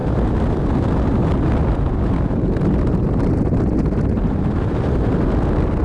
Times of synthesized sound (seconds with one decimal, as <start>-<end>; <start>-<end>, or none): none